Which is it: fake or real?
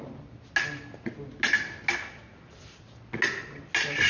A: real